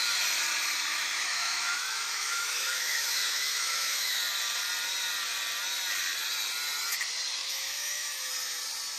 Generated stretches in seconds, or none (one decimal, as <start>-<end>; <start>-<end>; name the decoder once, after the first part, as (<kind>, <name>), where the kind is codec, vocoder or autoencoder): 0.9-4.2 (autoencoder, DAC-VAE); 7.4-8.3